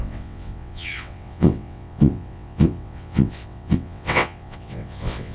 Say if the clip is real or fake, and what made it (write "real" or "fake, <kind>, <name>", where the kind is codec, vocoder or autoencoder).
fake, vocoder, WaveNeXt